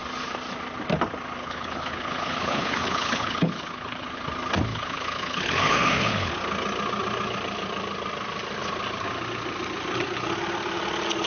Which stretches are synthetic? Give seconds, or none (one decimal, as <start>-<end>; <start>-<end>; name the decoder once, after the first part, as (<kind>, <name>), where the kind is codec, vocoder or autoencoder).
1.4-4.2 (codec, HILCodec); 4.7-6.3